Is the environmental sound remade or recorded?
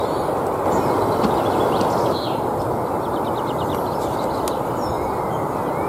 recorded